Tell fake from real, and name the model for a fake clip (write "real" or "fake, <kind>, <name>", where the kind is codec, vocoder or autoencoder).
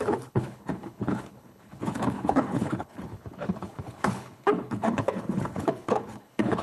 fake, codec, HILCodec